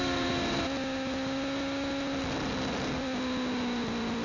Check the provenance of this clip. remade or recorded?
recorded